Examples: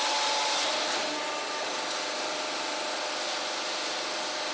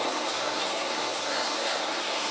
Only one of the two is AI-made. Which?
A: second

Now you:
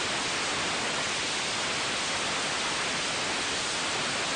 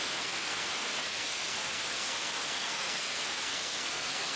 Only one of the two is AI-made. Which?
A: second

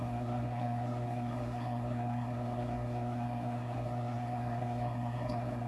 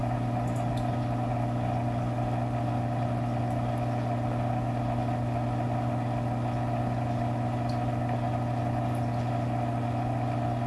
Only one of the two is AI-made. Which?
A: first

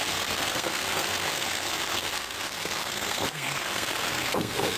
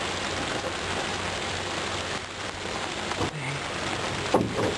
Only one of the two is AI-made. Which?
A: first